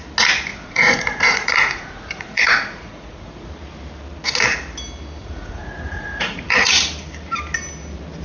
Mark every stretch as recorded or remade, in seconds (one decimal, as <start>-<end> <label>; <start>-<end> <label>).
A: 0.0-0.5 recorded; 0.5-3.5 remade; 3.5-5.2 recorded; 5.2-6.7 remade; 6.7-8.2 recorded